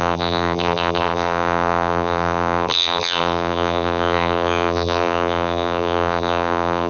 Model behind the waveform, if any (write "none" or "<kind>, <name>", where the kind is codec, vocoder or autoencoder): vocoder, BigVGAN v2